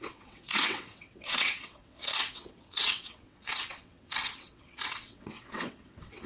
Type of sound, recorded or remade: remade